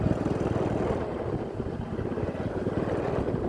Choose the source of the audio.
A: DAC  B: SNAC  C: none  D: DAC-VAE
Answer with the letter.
C